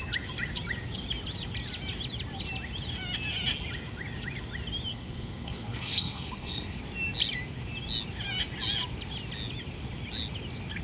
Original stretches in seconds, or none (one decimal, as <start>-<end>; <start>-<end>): 0.0-4.9; 6.8-10.8